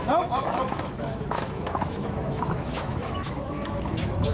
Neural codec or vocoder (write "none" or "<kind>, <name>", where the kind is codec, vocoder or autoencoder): autoencoder, DAC-VAE